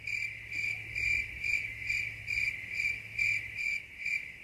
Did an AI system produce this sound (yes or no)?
no